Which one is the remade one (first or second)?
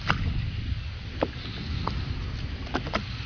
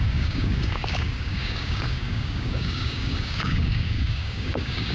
second